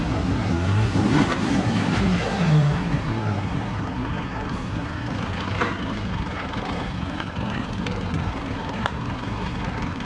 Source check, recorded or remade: remade